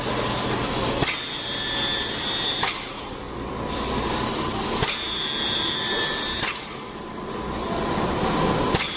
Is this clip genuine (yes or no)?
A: yes